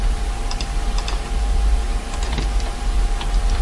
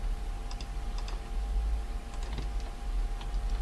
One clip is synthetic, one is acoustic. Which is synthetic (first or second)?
first